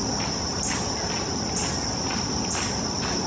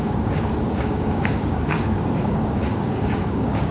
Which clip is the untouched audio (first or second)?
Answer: first